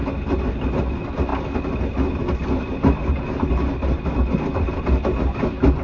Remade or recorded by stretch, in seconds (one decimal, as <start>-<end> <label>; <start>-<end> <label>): 0.0-5.8 recorded